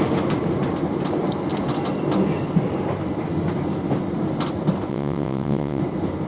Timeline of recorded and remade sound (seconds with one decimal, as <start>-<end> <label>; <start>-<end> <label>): 0.0-4.9 recorded; 4.9-5.8 remade; 5.8-6.3 recorded